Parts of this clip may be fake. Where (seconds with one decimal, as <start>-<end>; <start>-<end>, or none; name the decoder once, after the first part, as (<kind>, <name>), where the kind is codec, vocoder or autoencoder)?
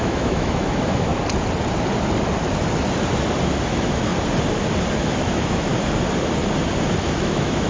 0.0-1.1 (autoencoder, DAC-VAE); 3.6-4.1; 4.9-5.7; 7.0-7.7